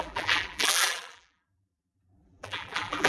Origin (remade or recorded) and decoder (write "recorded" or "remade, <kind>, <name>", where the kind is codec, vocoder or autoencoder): remade, vocoder, BigVGAN v2